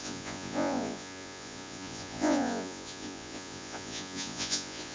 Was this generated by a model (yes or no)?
yes